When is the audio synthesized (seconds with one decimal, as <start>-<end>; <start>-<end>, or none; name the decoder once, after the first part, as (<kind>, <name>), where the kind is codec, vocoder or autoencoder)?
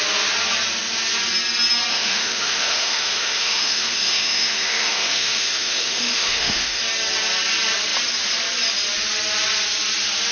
1.9-6.8 (autoencoder, DAC-VAE)